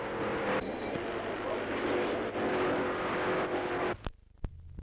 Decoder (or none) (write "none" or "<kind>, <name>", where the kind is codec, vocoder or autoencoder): none